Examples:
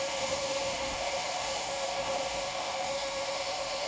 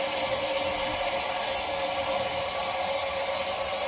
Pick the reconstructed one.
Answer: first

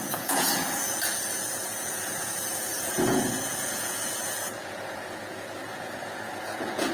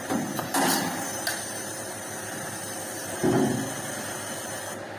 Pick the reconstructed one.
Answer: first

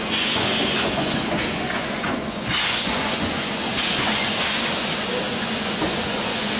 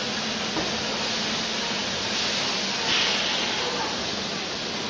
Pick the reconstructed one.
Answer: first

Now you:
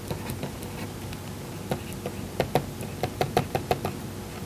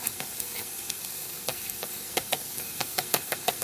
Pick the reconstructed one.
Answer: second